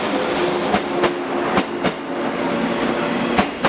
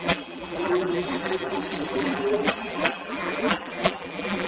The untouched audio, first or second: first